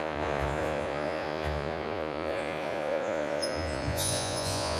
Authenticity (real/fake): fake